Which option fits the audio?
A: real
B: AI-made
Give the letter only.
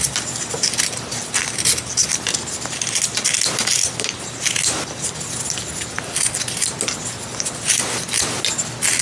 A